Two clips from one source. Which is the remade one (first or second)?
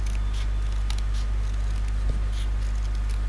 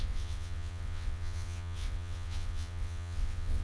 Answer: second